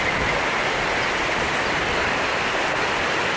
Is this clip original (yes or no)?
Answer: yes